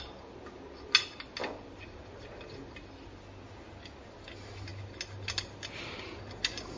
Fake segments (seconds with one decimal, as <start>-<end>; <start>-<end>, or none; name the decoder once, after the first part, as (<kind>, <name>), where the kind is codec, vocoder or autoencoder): none

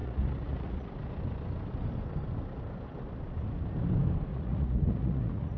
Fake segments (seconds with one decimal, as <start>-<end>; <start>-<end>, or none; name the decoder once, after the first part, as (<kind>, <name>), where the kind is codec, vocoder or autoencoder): 0.0-0.9 (vocoder, Vocos); 4.3-5.6